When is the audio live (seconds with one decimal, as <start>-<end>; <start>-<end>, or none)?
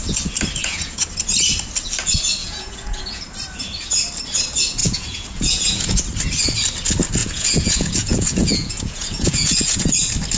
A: 0.0-0.6; 1.1-2.4; 3.2-4.8; 6.0-7.2; 9.9-10.4